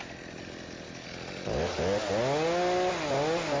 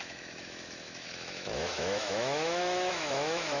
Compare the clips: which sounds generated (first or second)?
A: second